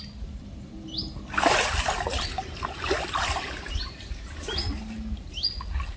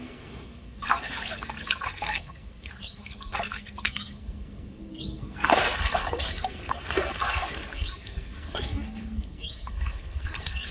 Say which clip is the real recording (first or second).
first